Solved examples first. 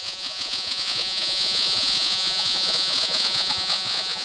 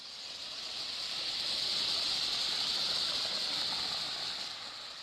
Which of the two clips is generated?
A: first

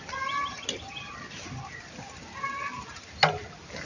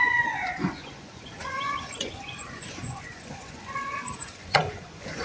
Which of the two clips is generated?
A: second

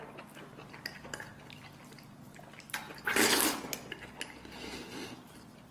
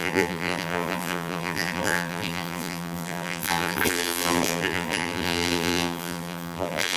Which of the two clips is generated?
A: second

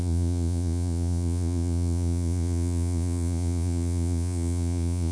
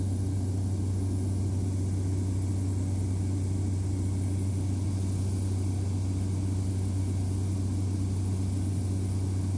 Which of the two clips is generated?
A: first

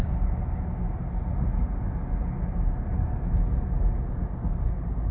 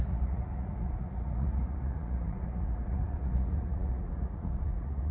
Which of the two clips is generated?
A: second